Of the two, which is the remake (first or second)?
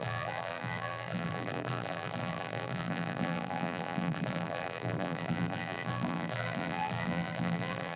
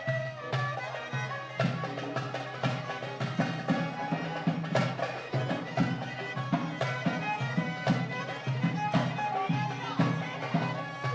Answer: first